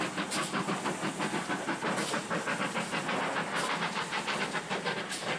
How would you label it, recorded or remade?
recorded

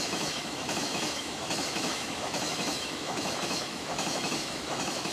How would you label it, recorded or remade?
remade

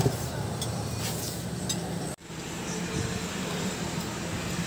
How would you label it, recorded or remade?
remade